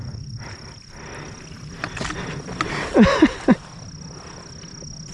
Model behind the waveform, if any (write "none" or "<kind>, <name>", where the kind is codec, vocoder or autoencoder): none